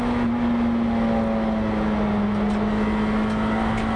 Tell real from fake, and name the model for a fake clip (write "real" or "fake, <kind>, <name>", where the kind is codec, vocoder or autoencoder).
real